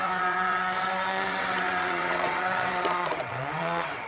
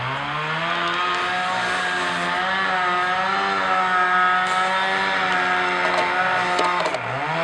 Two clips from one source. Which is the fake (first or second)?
first